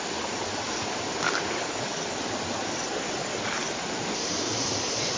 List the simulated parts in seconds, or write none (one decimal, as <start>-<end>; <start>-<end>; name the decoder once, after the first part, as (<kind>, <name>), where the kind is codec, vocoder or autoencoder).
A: 1.9-2.4 (vocoder, BigVGAN v2)